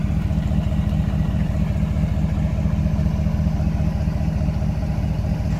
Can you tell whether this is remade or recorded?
recorded